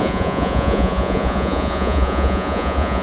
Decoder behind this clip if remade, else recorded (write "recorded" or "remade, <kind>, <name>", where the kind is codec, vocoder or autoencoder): remade, vocoder, Vocos